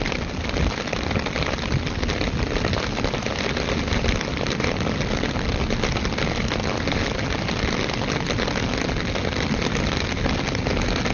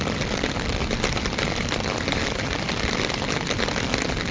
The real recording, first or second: first